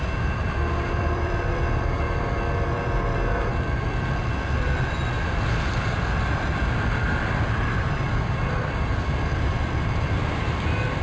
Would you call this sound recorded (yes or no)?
no